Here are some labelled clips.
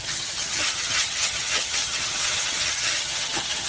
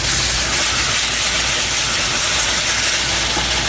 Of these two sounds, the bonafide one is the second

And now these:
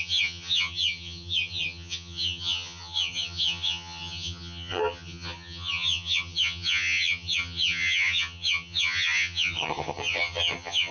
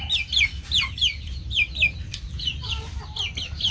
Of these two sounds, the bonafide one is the second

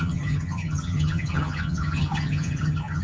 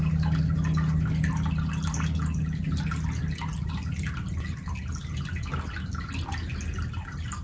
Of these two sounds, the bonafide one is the second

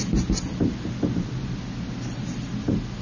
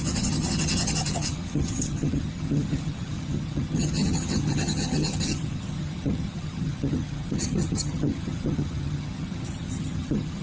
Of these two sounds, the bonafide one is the first